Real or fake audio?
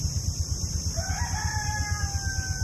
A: real